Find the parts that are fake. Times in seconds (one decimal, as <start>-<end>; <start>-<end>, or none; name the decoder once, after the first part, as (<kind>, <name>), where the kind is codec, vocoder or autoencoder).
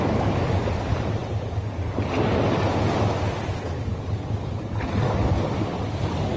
none